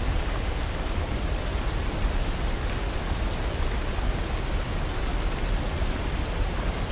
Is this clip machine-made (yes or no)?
no